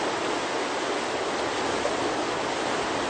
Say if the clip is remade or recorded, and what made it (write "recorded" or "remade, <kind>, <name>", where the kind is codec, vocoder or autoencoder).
recorded